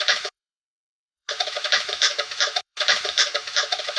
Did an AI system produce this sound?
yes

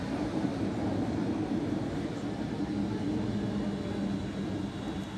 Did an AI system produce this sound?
no